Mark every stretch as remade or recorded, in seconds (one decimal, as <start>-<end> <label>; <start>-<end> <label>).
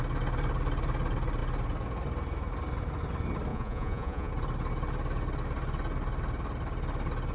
0.0-3.5 recorded; 3.5-4.3 remade; 4.3-7.3 recorded